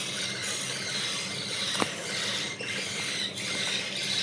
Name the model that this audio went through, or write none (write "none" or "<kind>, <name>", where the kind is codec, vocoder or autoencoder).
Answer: none